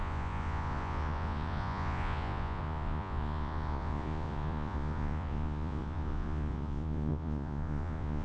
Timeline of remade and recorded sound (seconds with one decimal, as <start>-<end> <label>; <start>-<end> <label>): 0.0-8.2 remade